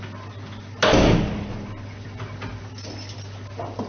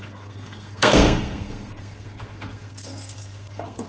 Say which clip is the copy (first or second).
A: second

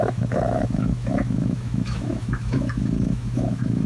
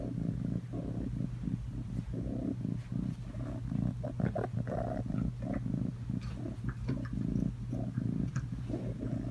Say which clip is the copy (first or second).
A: first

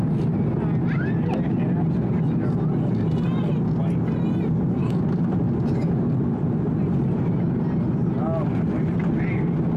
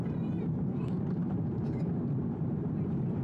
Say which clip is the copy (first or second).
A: second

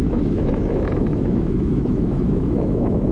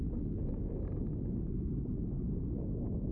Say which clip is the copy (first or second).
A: first